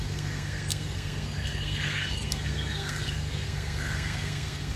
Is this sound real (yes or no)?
no